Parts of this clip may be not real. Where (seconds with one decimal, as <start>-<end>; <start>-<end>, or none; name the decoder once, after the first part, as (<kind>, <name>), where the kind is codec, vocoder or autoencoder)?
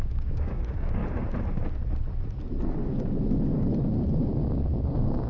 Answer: 0.0-1.0 (codec, DAC); 4.2-5.3